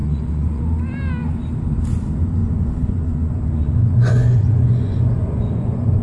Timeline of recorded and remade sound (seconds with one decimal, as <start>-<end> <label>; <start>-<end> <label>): 0.0-0.6 remade; 0.6-2.4 recorded; 2.4-6.0 remade